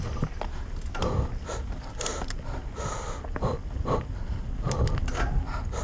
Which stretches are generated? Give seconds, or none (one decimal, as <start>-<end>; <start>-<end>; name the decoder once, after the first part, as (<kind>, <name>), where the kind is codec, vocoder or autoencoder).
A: 2.1-3.6 (vocoder, BigVGAN v2)